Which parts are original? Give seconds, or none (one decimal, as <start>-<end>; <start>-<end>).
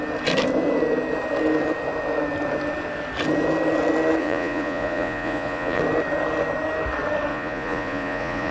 0.0-4.2; 5.8-7.3